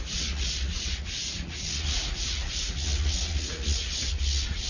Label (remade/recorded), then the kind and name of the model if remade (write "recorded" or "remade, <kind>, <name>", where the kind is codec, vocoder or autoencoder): remade, vocoder, Vocos